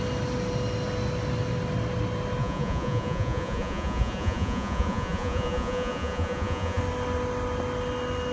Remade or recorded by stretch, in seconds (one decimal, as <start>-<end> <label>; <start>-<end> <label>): 0.0-2.4 recorded; 2.4-6.8 remade; 6.8-8.3 recorded